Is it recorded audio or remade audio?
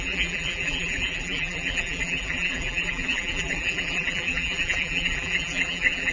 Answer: remade